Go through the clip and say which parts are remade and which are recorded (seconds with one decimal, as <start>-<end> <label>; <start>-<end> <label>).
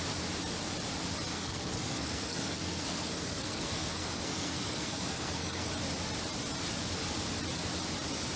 0.0-1.3 recorded; 1.3-5.7 remade; 5.7-8.4 recorded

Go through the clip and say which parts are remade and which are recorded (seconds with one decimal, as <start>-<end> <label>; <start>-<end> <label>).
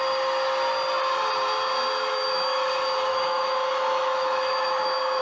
0.0-1.9 recorded; 1.9-2.7 remade; 2.7-3.1 recorded; 3.1-5.2 remade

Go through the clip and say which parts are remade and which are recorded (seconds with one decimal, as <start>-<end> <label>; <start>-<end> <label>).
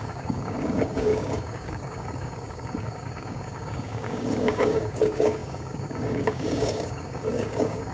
0.0-7.9 remade